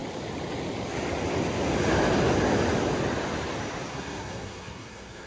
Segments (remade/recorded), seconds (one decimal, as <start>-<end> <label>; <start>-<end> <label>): 0.0-3.9 recorded; 3.9-5.3 remade